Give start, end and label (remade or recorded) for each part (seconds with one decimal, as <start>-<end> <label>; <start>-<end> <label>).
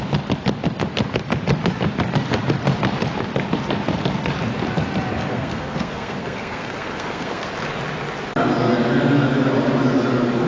0.0-5.3 recorded; 5.3-7.5 remade; 7.5-10.5 recorded